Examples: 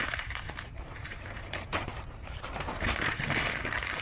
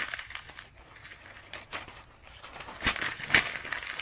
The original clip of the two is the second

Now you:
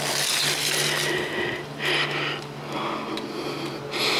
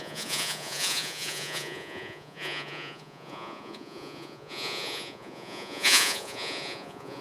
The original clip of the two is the first